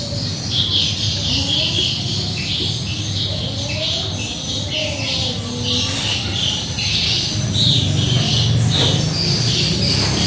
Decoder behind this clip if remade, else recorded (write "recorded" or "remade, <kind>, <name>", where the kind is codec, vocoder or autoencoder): recorded